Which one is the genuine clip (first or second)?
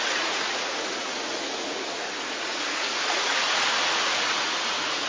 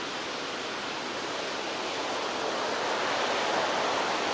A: second